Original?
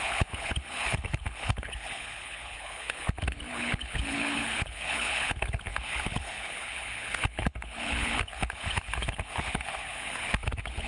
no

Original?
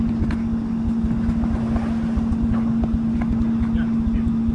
yes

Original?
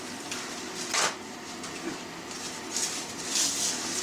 yes